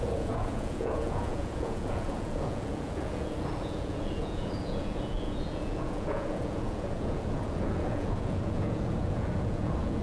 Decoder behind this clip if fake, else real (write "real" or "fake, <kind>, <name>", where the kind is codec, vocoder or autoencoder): fake, vocoder, Vocos